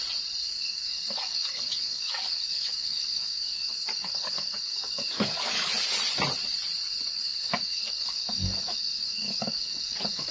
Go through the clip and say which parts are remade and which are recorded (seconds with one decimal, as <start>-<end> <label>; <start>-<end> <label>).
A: 0.0-0.4 recorded; 0.4-5.7 remade; 5.7-7.1 recorded; 7.1-10.3 remade